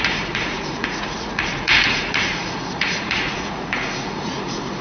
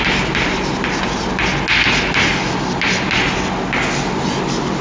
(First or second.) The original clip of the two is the second